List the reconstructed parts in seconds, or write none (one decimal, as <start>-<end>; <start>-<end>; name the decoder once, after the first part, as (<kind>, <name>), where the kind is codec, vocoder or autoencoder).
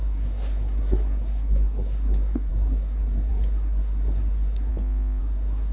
0.0-4.7 (codec, SNAC); 5.2-5.7